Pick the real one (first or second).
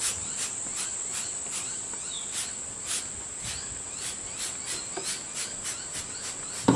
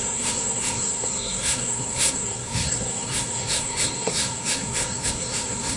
first